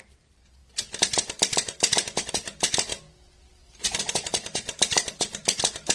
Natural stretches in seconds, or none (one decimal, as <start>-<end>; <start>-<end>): 0.0-5.9

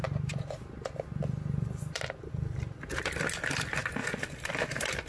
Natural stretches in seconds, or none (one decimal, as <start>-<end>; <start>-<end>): 0.0-5.1

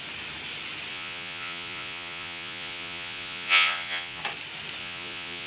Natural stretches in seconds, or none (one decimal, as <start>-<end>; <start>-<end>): 0.0-0.9; 4.2-4.8

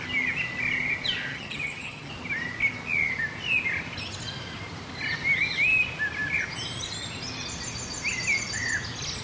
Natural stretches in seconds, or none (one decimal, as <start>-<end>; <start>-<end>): 0.0-1.3; 2.1-9.2

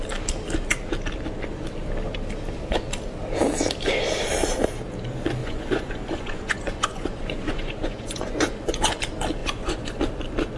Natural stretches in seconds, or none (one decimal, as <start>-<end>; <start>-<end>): 0.0-5.4; 9.0-9.4; 10.0-10.6

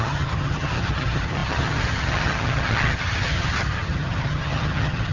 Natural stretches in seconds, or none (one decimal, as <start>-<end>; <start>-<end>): none

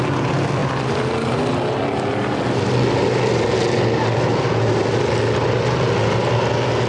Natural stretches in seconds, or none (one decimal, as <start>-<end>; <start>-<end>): 0.0-6.9

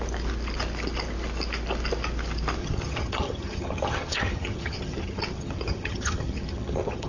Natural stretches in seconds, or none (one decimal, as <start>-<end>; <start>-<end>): 0.0-2.6